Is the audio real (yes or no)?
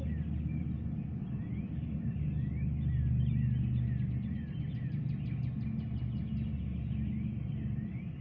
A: yes